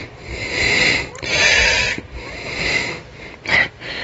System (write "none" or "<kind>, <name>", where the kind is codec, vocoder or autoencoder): none